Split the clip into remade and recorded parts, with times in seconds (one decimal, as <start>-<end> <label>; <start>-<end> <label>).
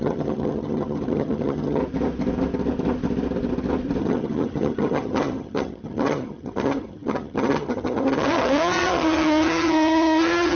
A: 0.0-1.8 remade; 1.8-4.0 recorded; 4.0-10.6 remade